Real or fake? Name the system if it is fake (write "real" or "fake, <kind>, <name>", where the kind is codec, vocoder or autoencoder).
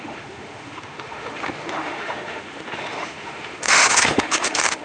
fake, autoencoder, DAC-VAE